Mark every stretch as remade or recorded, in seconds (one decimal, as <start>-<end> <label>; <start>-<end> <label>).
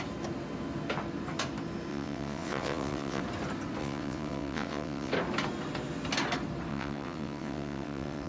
0.0-1.9 recorded; 1.9-3.2 remade; 3.2-3.8 recorded; 3.8-5.1 remade; 5.1-6.7 recorded; 6.7-8.3 remade